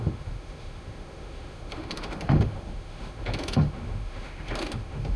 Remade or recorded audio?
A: remade